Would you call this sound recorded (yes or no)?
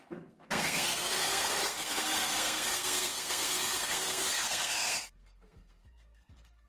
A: no